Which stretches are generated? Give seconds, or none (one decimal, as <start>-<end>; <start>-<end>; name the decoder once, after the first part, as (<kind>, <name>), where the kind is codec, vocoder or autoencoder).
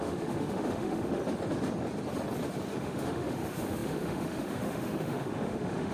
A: 0.0-1.2 (autoencoder, DAC-VAE); 2.8-5.9